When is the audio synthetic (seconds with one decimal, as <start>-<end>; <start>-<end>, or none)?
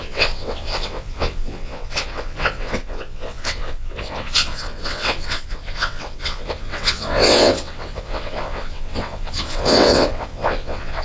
0.0-11.0